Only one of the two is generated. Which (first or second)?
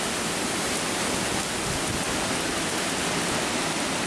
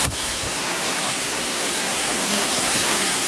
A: second